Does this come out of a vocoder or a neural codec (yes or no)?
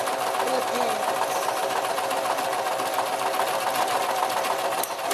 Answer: no